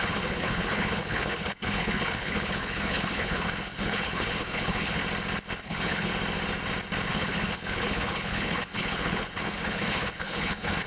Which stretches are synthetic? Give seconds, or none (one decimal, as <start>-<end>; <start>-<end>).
0.0-5.0; 5.6-6.1; 7.1-10.9